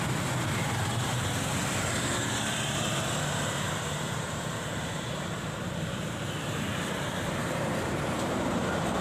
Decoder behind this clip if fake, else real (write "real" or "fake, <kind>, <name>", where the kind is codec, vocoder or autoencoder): fake, vocoder, BigVGAN v2